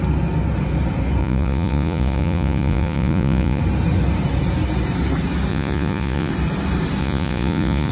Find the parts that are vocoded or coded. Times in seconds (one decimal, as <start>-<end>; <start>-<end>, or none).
1.2-3.6; 5.5-6.3; 7.0-7.9